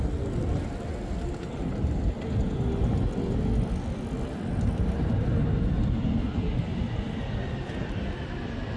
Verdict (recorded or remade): recorded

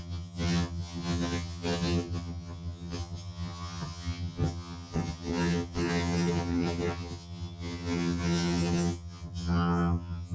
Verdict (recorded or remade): remade